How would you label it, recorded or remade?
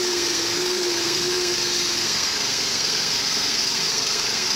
remade